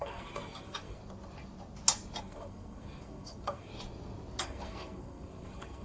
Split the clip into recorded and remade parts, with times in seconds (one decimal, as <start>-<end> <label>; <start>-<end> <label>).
0.0-1.0 remade; 1.0-2.2 recorded; 2.2-3.7 remade; 3.7-4.4 recorded; 4.4-5.8 remade